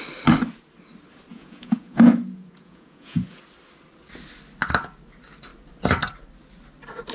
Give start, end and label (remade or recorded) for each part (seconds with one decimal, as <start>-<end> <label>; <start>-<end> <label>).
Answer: 0.0-1.3 recorded; 1.3-3.4 remade; 3.4-7.1 recorded